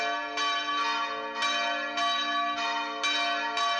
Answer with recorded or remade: recorded